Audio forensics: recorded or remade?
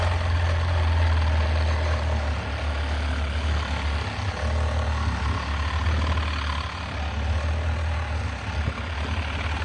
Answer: recorded